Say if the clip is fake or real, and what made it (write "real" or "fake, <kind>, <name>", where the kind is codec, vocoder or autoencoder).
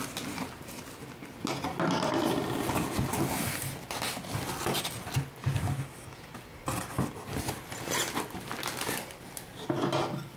real